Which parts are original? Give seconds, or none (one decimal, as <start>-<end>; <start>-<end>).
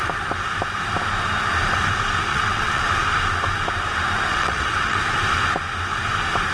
0.0-2.3; 2.8-4.3; 5.0-6.5